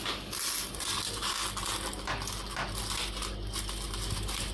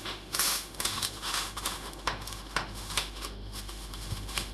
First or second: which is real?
first